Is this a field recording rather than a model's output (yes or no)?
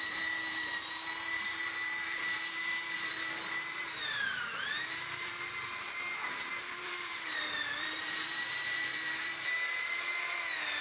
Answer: no